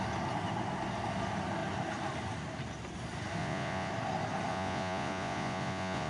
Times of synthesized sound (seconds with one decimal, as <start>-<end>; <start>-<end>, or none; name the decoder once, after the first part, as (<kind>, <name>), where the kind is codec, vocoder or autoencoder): 3.4-3.9 (vocoder, Vocos); 4.5-6.1